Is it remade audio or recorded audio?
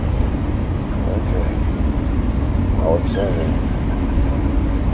recorded